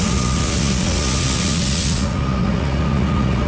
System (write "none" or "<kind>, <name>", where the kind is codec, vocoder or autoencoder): vocoder, Vocos